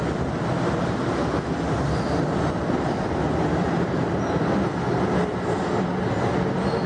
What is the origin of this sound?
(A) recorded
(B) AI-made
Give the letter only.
A